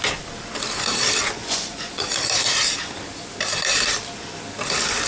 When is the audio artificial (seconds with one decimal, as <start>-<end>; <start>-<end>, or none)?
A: 1.2-2.1